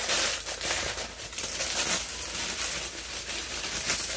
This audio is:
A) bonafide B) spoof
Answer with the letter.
A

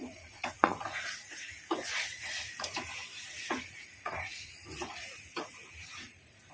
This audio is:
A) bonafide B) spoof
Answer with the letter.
B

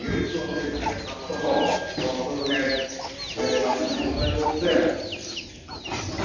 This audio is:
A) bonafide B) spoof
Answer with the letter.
A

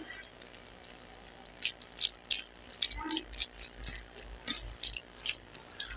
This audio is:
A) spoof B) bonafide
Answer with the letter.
B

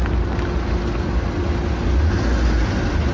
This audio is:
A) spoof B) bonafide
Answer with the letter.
B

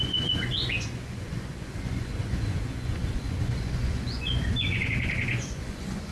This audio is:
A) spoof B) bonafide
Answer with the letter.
A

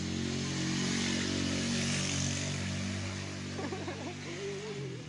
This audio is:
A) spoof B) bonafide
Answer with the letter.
B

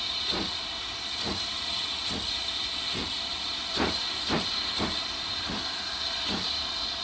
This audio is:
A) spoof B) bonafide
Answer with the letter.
B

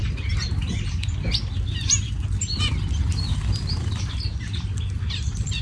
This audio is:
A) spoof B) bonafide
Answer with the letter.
B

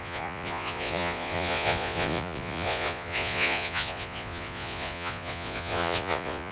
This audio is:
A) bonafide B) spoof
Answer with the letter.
B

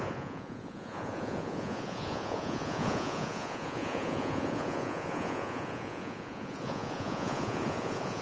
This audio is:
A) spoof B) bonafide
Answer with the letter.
A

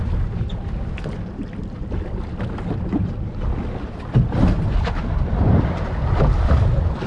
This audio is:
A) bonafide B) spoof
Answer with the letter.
A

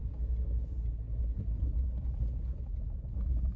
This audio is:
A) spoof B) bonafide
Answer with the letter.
B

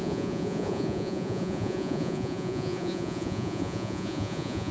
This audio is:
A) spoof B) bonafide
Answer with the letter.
A